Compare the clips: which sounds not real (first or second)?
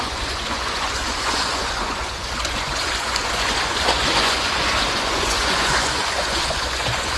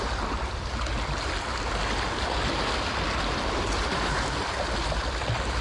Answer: first